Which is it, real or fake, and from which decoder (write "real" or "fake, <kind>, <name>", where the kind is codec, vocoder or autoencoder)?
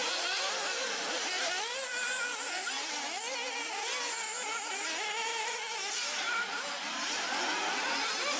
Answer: real